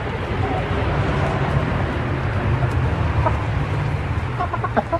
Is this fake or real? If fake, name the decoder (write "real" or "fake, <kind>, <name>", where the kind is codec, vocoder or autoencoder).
real